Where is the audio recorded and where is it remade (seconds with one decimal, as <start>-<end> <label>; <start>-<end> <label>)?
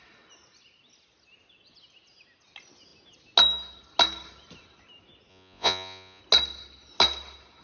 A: 0.0-5.3 recorded; 5.3-6.2 remade; 6.2-7.6 recorded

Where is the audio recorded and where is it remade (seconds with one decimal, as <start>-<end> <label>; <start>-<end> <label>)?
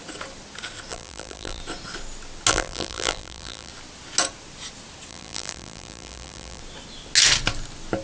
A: 0.0-0.9 recorded; 0.9-1.6 remade; 1.6-2.5 recorded; 2.5-3.7 remade; 3.7-5.1 recorded; 5.1-6.6 remade; 6.6-8.0 recorded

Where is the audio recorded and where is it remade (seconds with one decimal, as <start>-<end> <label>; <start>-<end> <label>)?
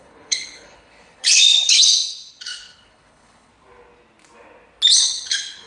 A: 0.0-3.5 remade; 3.5-4.9 recorded; 4.9-5.7 remade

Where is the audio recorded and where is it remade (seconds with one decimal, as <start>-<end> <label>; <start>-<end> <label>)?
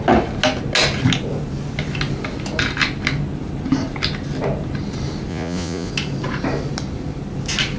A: 0.0-5.3 recorded; 5.3-5.9 remade; 5.9-7.8 recorded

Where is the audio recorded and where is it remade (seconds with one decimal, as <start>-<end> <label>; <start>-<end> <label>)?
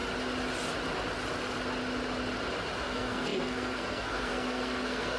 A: 0.0-2.8 recorded; 2.8-5.2 remade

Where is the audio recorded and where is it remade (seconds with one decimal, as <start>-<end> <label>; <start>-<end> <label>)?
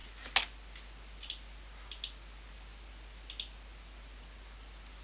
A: 0.0-5.0 recorded